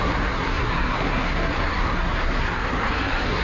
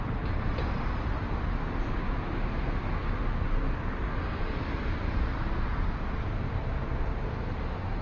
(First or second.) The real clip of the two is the second